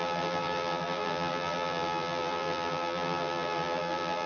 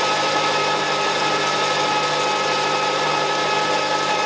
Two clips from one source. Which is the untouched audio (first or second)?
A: second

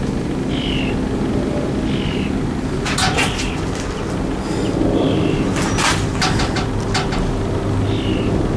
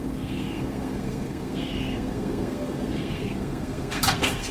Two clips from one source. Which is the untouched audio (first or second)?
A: first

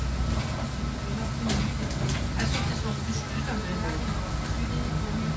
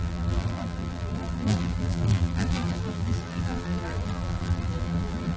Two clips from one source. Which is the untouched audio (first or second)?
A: first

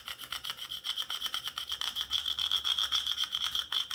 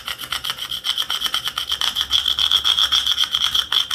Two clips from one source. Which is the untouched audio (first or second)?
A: second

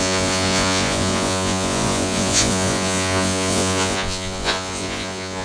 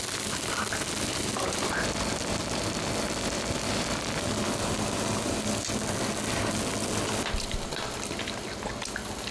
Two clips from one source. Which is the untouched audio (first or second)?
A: second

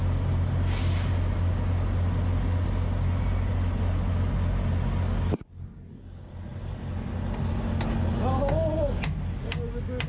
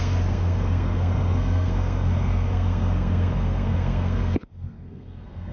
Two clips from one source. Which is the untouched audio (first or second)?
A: first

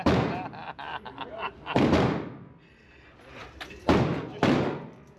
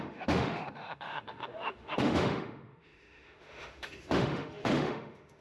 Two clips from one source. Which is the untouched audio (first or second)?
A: first